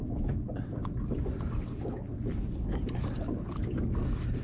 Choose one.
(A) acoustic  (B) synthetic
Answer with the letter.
A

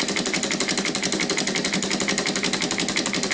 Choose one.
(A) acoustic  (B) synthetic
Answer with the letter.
A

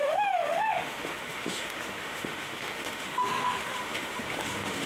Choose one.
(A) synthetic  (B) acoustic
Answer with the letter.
A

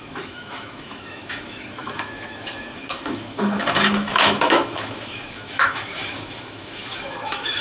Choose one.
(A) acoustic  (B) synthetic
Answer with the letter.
B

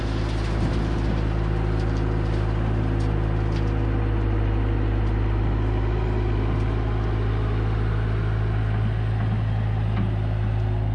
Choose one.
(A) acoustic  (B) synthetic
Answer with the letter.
A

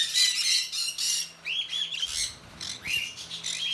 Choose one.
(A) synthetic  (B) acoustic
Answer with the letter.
B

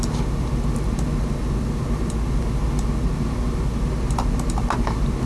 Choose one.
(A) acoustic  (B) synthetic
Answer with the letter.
A